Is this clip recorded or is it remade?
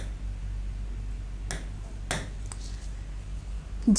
recorded